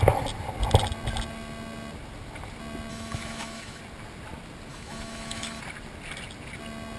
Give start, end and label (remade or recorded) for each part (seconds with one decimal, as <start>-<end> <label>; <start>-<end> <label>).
0.0-2.9 recorded; 2.9-3.8 remade; 3.8-4.7 recorded; 4.7-5.6 remade; 5.6-7.0 recorded